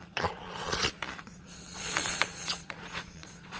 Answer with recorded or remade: remade